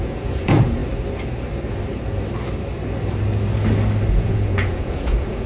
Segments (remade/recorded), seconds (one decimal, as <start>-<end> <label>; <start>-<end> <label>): 0.0-0.8 remade; 0.8-4.1 recorded; 4.1-5.5 remade